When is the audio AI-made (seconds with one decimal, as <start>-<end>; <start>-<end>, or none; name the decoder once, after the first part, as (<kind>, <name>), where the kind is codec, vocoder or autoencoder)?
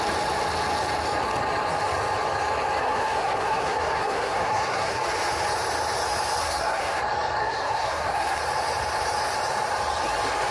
2.8-5.0 (codec, SNAC); 6.4-7.0; 7.4-8.4